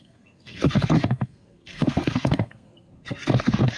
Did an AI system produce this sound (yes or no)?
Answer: yes